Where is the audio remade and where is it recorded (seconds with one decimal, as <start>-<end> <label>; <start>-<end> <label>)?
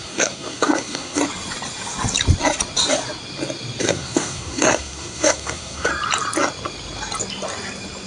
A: 0.0-1.2 remade; 1.2-3.8 recorded; 3.8-5.9 remade; 5.9-8.1 recorded